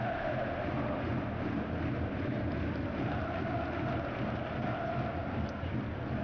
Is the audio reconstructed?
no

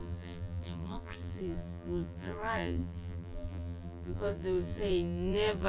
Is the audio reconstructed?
yes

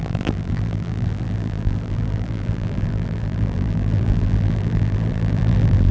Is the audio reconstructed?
yes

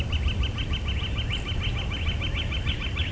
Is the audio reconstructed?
no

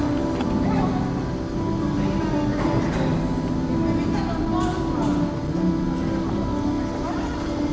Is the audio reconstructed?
no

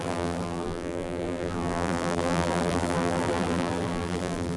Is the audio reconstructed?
yes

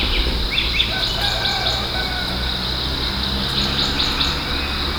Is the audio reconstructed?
no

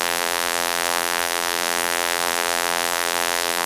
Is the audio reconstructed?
yes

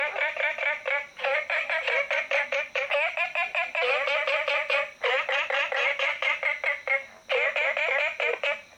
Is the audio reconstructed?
no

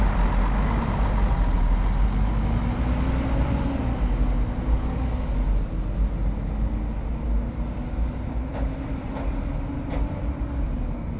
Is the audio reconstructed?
no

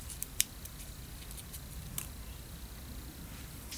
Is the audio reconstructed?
no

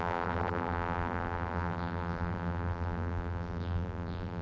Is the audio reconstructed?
yes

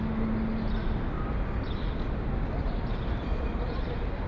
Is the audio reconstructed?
no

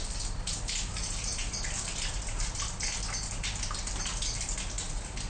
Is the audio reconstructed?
no